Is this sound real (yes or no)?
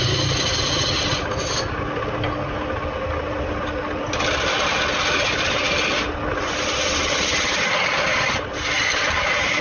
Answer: yes